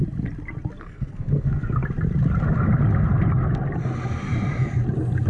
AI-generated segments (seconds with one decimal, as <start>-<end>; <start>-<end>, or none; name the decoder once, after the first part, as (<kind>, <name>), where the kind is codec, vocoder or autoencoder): 0.8-1.8 (codec, SNAC)